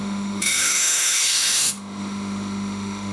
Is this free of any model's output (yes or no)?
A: no